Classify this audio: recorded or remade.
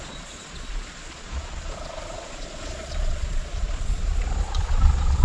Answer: remade